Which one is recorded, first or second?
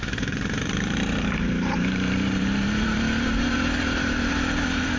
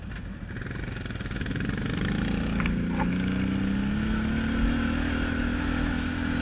second